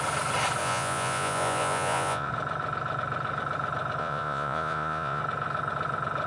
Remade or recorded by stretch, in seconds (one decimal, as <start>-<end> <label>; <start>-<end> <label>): 0.0-0.6 recorded; 0.6-2.3 remade; 2.3-4.0 recorded; 4.0-5.2 remade; 5.2-6.3 recorded